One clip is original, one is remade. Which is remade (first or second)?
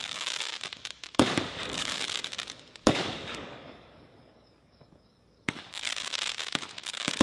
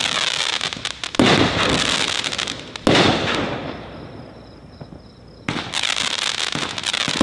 first